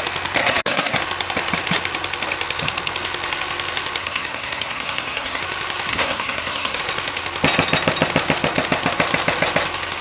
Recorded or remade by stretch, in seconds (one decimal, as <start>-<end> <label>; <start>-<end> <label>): 0.0-0.4 recorded; 0.4-1.0 remade; 1.0-4.0 recorded; 4.0-5.4 remade; 5.4-5.9 recorded; 5.9-6.8 remade; 6.8-10.0 recorded